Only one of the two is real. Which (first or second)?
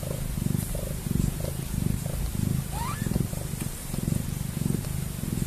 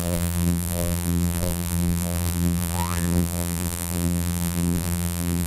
first